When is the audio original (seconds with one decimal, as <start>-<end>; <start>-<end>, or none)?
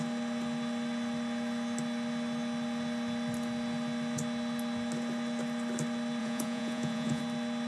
0.0-6.2; 7.2-7.7